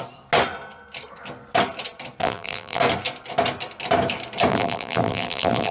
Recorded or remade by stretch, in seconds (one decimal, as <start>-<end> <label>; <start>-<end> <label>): 0.0-2.2 recorded; 2.2-2.8 remade; 2.8-4.5 recorded; 4.5-5.7 remade